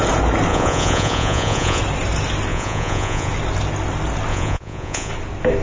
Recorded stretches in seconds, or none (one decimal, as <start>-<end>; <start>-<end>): 0.0-0.5; 1.8-2.5; 3.3-4.3; 5.1-5.6